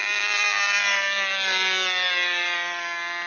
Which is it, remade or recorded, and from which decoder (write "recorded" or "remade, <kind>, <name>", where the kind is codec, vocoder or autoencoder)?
recorded